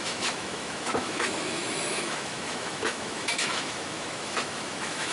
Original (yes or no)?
no